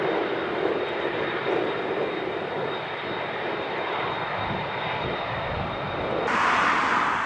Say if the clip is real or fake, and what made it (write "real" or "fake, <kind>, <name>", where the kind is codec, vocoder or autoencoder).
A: real